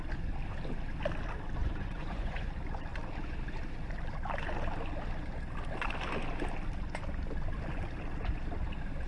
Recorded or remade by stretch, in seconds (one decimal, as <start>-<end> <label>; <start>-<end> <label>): 0.0-1.6 recorded; 1.6-2.5 remade; 2.5-9.1 recorded